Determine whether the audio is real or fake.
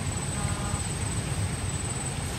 real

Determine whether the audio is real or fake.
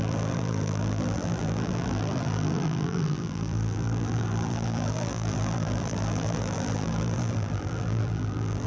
fake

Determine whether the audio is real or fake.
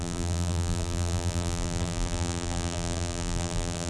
fake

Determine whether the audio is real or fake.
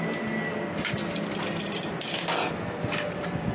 real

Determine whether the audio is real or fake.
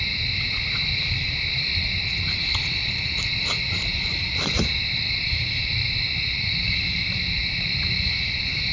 fake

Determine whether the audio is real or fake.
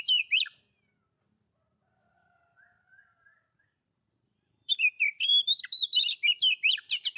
fake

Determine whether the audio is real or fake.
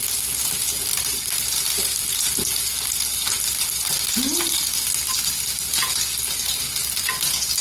real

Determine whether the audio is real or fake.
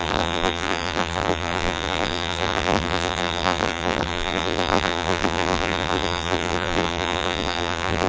fake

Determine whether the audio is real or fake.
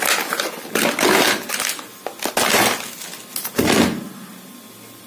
real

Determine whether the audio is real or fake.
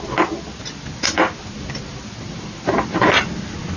real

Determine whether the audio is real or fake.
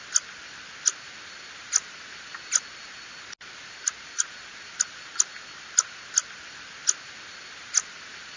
real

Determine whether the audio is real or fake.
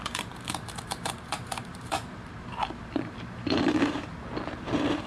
fake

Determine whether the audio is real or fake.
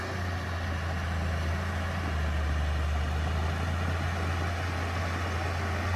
real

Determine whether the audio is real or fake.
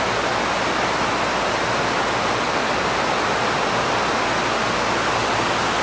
real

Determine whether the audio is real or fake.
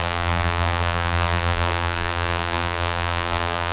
fake